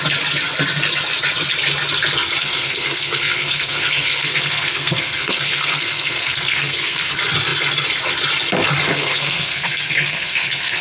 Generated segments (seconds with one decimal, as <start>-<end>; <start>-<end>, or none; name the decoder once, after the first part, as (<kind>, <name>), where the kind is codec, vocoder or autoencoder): 2.4-7.1 (codec, SNAC); 8.9-10.8